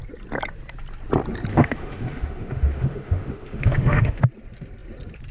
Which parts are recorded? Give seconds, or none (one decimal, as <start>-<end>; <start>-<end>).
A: 0.0-1.5; 4.2-5.3